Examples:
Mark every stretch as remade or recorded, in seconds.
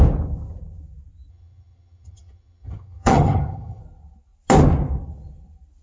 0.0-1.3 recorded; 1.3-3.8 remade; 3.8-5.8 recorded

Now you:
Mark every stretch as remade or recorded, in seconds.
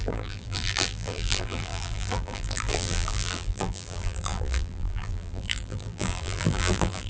0.0-7.1 remade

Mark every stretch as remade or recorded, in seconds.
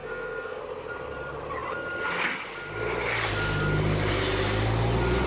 0.0-0.6 remade; 0.6-5.3 recorded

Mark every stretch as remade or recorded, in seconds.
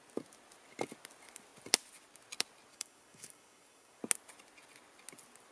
0.0-2.7 recorded; 2.7-4.0 remade; 4.0-5.5 recorded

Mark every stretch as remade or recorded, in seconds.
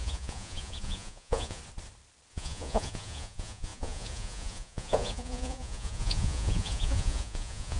0.0-1.6 remade; 1.6-2.3 recorded; 2.3-7.8 remade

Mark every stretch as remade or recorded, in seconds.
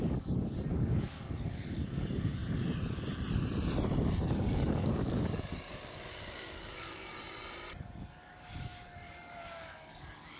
0.0-2.4 remade; 2.4-4.3 recorded; 4.3-7.1 remade; 7.1-8.2 recorded; 8.2-10.4 remade